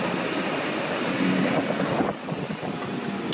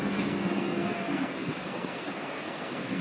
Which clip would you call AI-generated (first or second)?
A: second